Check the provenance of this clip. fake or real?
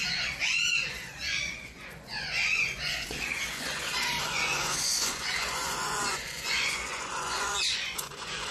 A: fake